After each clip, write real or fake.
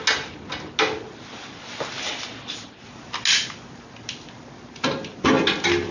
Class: real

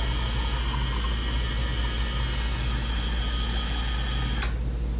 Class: real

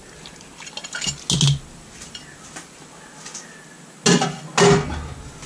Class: real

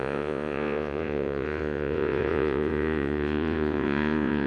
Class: fake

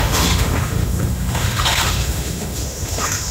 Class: fake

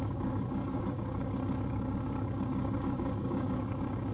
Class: fake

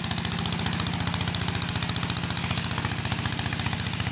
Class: real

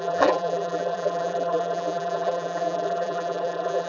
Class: fake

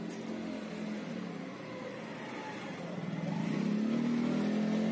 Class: real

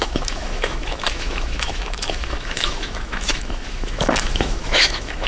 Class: fake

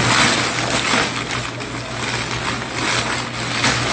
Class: real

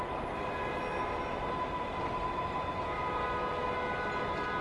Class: real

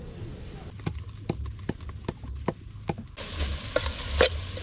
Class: real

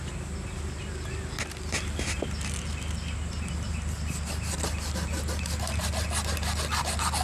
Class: real